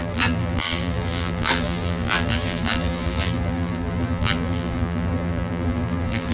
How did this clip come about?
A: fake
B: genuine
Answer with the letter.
A